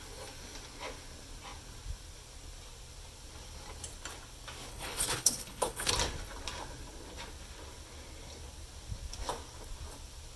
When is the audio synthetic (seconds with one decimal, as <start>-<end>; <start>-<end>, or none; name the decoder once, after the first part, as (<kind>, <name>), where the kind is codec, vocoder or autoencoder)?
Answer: 4.7-5.9 (codec, HILCodec)